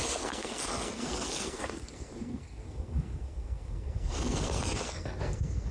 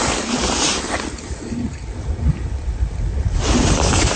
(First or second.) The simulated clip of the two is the first